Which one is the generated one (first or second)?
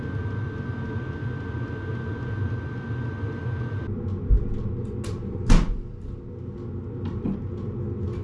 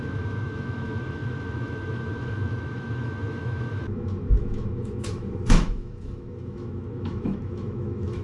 second